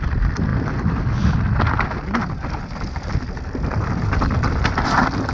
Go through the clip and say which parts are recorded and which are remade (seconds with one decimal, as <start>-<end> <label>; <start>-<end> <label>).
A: 0.0-5.3 recorded